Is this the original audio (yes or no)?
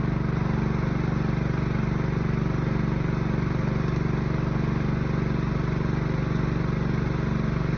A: yes